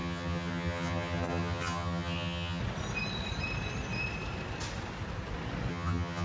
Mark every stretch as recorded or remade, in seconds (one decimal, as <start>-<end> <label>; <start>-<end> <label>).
0.0-2.6 remade; 2.6-5.7 recorded; 5.7-6.2 remade